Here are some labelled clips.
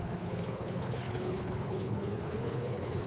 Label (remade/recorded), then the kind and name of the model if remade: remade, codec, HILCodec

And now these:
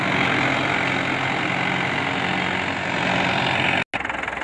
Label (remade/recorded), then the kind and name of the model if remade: recorded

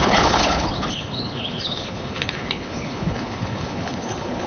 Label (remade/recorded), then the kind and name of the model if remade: remade, codec, HILCodec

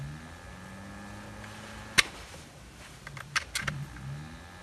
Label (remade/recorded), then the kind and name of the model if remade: recorded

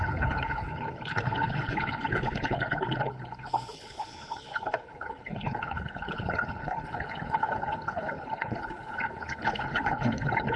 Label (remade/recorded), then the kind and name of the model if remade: remade, codec, HILCodec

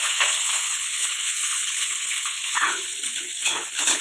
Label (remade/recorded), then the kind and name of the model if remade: remade, codec, HILCodec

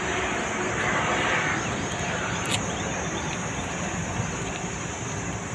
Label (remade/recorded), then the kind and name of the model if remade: recorded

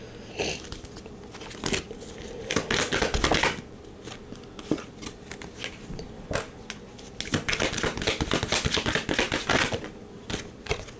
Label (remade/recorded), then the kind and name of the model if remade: recorded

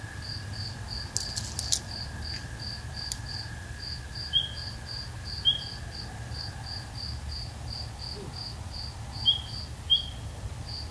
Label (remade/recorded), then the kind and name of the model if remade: recorded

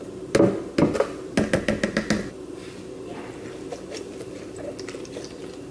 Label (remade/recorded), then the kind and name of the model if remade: recorded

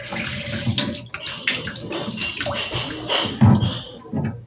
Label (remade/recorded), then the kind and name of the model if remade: recorded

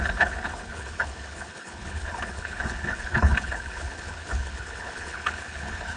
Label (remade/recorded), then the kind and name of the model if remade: remade, codec, HILCodec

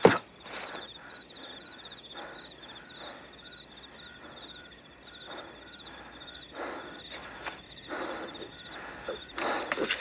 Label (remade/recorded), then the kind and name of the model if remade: recorded